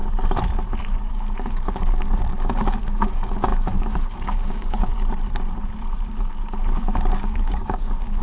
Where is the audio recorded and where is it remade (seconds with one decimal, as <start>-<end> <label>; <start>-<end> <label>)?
0.0-1.1 recorded; 1.1-4.9 remade; 4.9-7.1 recorded; 7.1-8.2 remade